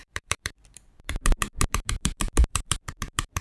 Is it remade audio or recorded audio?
remade